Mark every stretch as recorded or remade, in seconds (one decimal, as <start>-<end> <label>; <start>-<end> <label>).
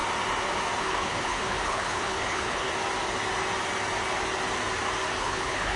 0.0-0.8 recorded; 0.8-2.7 remade; 2.7-5.2 recorded; 5.2-5.8 remade